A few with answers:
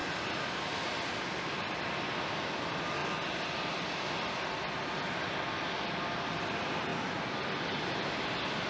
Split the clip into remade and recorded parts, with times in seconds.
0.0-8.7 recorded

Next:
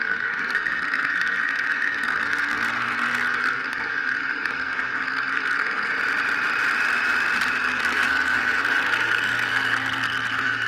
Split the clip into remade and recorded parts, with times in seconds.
0.0-5.9 remade; 5.9-7.6 recorded; 7.6-10.7 remade

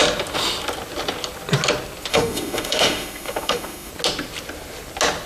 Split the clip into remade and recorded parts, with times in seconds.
0.0-2.1 recorded; 2.1-3.9 remade; 3.9-5.3 recorded

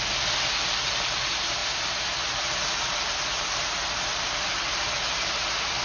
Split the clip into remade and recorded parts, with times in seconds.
0.0-5.8 recorded